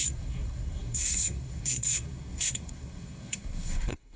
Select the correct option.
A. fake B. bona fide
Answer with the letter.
A